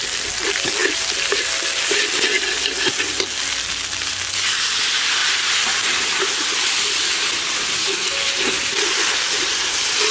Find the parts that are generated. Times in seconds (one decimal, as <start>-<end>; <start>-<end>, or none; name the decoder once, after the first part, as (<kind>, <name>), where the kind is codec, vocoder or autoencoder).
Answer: 7.8-8.3 (codec, SNAC)